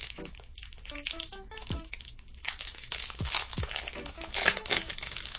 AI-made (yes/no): yes